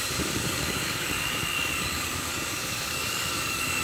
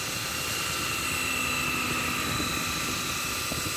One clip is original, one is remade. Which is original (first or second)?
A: second